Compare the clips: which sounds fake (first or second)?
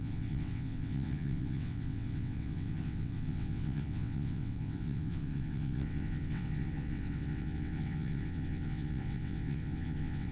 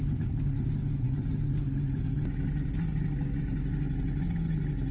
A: first